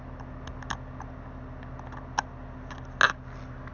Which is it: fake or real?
real